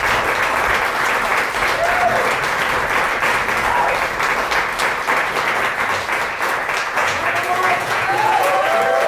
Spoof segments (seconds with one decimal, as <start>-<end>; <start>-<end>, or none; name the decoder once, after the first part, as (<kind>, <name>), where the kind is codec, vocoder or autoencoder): 7.0-8.7 (vocoder, Vocos)